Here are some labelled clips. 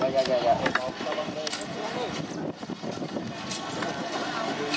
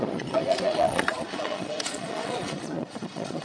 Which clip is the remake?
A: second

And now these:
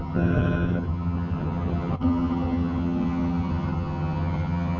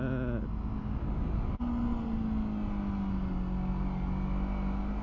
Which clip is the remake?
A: first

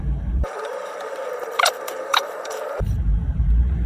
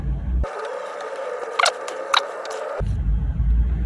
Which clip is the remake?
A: first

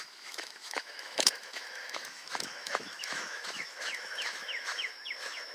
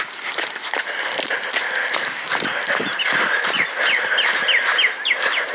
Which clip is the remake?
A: first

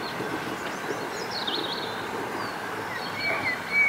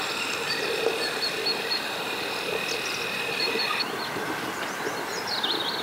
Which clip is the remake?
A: second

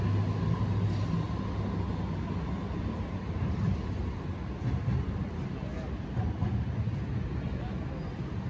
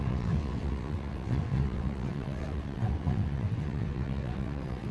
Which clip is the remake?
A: second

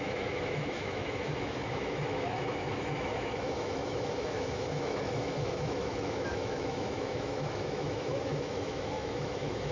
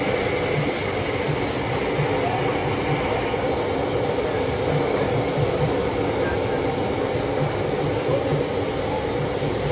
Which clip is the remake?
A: first